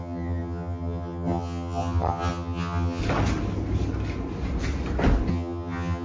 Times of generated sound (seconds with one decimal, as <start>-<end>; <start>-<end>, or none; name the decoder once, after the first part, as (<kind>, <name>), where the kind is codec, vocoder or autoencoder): 0.0-3.0 (vocoder, HiFi-GAN); 5.3-6.0